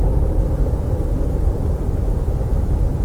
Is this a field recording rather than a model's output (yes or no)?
yes